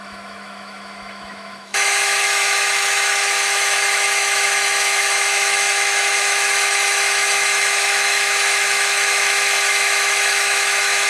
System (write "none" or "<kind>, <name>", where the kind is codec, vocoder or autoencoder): autoencoder, DAC-VAE